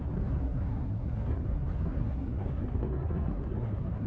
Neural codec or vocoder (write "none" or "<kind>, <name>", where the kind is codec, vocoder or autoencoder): codec, SNAC